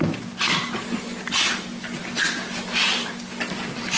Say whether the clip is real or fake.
real